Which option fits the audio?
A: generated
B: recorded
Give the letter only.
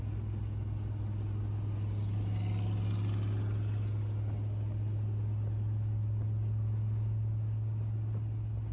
B